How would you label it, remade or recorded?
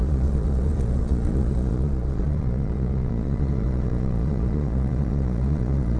remade